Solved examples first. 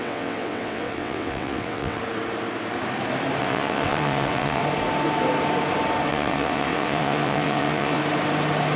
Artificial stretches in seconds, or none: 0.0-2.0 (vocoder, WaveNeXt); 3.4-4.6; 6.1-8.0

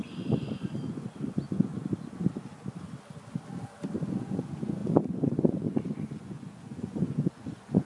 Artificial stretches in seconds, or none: 0.0-1.7 (vocoder, Vocos); 4.0-7.9